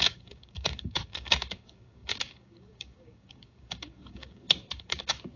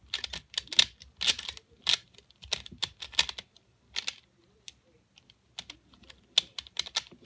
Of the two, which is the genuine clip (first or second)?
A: second